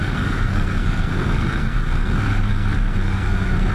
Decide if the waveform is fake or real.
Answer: fake